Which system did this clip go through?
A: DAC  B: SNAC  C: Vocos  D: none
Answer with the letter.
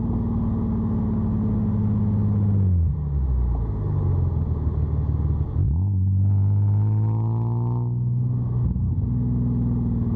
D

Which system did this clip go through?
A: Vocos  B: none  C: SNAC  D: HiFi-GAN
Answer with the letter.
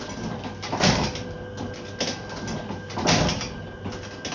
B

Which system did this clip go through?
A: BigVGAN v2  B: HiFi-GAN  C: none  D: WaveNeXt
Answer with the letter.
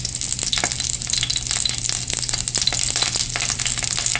C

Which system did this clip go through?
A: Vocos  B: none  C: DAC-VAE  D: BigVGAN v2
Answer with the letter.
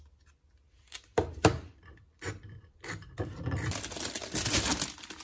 B